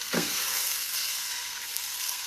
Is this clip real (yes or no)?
no